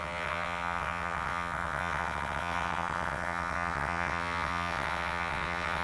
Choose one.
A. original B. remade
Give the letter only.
B